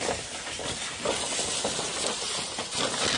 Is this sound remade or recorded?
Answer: recorded